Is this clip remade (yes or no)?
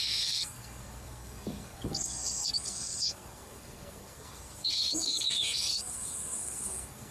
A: yes